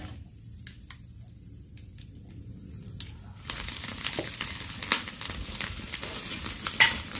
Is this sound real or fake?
real